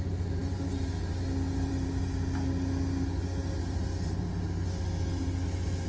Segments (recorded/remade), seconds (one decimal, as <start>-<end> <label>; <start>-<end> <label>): 0.0-5.9 recorded